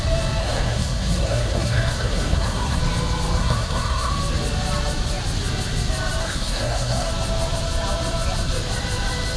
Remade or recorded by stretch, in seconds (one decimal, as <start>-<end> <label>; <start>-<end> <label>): 0.0-0.4 recorded; 0.4-2.8 remade; 2.8-3.4 recorded; 3.4-4.1 remade; 4.1-6.2 recorded; 6.2-7.1 remade; 7.1-9.4 recorded